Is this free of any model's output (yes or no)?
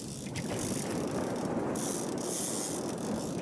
yes